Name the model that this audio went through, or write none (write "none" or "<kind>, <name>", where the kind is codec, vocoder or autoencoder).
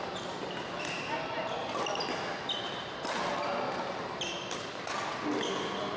none